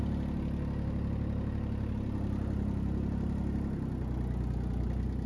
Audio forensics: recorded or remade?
recorded